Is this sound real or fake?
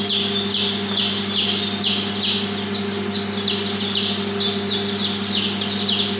real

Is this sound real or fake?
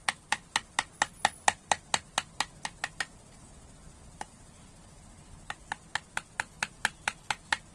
real